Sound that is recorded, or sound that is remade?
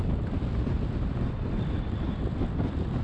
recorded